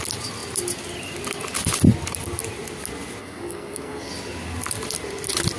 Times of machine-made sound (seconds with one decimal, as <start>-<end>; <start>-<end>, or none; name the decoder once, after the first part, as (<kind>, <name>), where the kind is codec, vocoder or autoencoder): 3.2-4.1 (codec, SNAC)